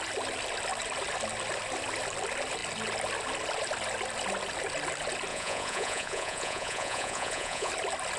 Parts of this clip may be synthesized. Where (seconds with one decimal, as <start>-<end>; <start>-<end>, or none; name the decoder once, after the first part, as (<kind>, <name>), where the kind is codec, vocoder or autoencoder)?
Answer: 5.3-7.7 (vocoder, Vocos)